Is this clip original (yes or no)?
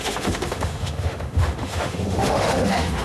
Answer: no